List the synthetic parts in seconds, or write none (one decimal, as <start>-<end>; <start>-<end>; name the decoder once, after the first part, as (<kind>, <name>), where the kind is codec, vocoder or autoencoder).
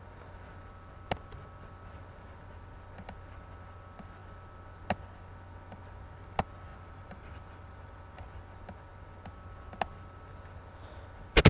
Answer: 6.7-8.0 (vocoder, BigVGAN v2)